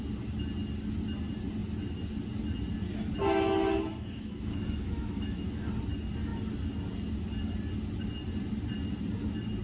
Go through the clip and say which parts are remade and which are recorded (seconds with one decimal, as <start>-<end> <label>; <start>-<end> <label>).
0.0-3.9 recorded; 3.9-5.7 remade; 5.7-9.6 recorded